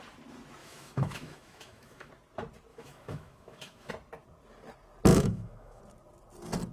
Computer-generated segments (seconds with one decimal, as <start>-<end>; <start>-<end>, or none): 0.6-2.1; 2.7-3.9; 5.1-5.8